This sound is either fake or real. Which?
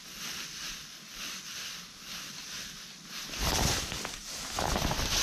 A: real